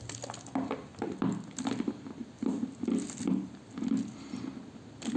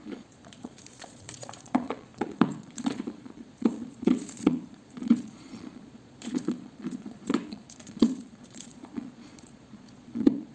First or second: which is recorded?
first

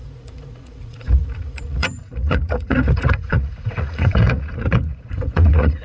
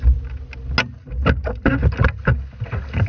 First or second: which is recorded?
second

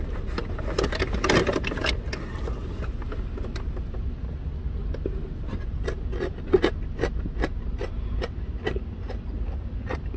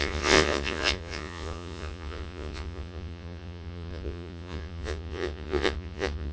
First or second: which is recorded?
first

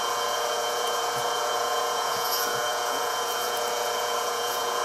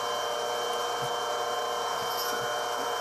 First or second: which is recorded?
second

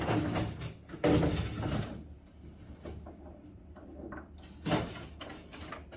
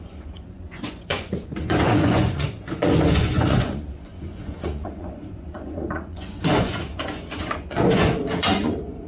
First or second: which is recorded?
first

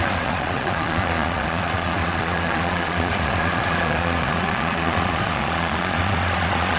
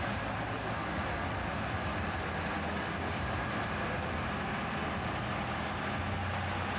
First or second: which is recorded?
second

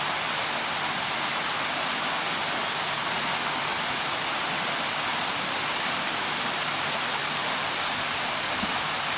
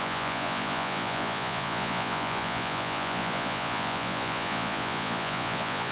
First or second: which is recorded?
first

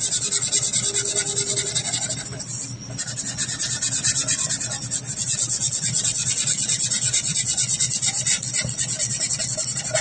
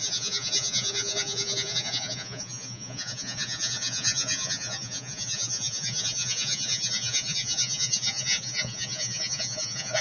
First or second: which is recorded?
first